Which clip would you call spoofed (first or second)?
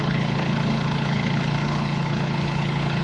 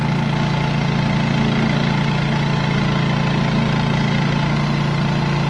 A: first